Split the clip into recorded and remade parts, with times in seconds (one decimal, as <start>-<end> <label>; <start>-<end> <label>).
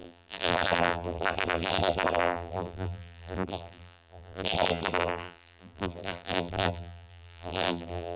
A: 0.0-8.2 remade